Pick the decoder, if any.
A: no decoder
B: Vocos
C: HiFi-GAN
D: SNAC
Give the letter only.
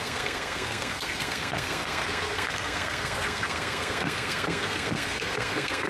D